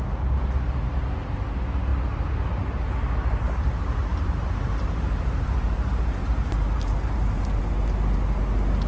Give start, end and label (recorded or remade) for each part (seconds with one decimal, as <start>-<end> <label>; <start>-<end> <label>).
0.0-4.1 recorded; 4.1-7.6 remade; 7.6-8.9 recorded